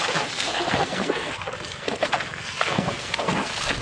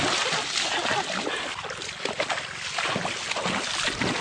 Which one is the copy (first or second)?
first